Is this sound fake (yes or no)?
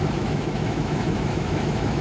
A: yes